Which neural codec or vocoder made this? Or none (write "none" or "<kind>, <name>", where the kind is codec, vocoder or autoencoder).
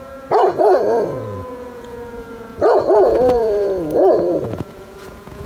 vocoder, Vocos